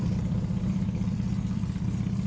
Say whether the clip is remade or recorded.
remade